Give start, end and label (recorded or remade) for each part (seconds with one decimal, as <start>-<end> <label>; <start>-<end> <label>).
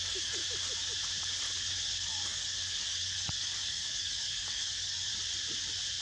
0.0-0.4 remade; 0.4-1.9 recorded; 1.9-5.1 remade; 5.1-6.0 recorded